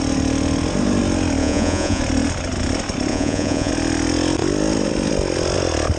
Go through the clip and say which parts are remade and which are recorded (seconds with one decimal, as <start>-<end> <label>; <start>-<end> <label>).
0.0-1.4 recorded; 1.4-2.0 remade; 2.0-3.1 recorded; 3.1-3.7 remade; 3.7-6.0 recorded